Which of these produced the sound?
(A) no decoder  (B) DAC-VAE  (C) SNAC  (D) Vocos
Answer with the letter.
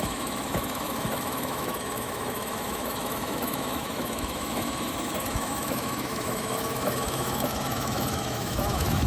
B